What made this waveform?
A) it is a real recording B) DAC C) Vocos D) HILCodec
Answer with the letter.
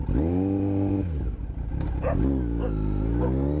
A